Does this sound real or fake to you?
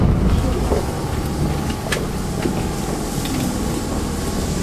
real